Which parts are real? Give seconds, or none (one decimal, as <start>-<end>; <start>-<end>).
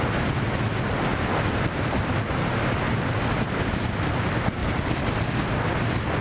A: 0.0-1.1; 2.2-4.6; 5.1-6.2